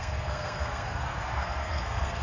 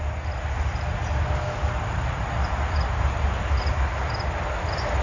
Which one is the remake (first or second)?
first